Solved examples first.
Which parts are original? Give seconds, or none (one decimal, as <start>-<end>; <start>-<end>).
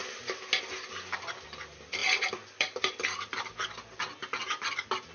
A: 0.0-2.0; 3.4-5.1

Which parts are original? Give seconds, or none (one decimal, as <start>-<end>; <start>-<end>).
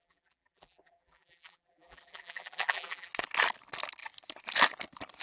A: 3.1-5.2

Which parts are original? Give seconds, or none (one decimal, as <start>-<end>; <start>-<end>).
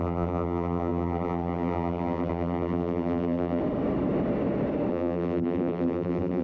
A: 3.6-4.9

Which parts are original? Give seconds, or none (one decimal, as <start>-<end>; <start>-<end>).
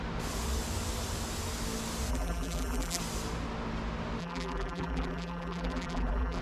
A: 0.0-2.1; 3.0-4.2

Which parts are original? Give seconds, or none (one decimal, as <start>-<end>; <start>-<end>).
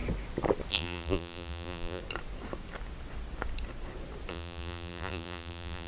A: 0.0-0.7; 2.0-4.3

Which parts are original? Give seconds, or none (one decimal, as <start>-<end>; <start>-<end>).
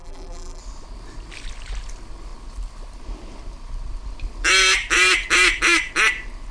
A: 0.6-6.5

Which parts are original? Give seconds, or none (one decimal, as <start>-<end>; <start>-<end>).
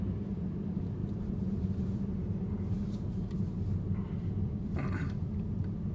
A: 0.0-1.0; 3.4-5.9